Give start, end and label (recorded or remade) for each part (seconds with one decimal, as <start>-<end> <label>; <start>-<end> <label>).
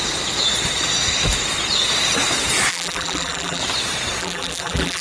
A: 0.0-2.7 recorded; 2.7-3.6 remade; 3.6-4.2 recorded; 4.2-5.0 remade